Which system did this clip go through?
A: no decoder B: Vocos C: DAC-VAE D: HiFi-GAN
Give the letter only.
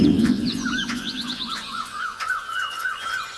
B